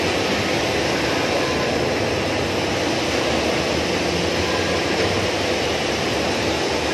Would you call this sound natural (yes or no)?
yes